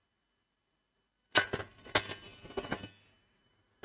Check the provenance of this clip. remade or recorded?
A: recorded